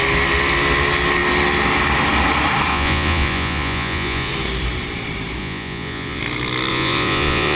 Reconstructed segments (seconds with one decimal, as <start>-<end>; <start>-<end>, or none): 2.7-4.3; 5.4-6.2; 6.7-7.6